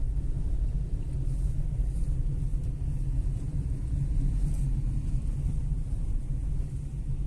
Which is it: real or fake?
real